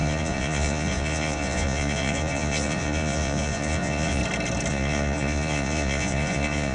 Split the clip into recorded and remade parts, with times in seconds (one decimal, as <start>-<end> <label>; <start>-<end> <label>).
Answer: 0.0-4.2 remade; 4.2-4.7 recorded; 4.7-6.7 remade